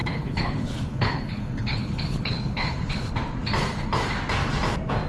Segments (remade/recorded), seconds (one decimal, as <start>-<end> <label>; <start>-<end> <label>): 0.0-3.1 remade; 3.1-5.1 recorded